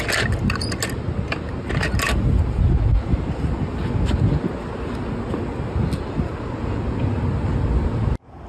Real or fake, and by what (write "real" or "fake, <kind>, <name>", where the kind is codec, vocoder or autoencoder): real